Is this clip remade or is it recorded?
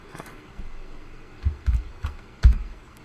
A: remade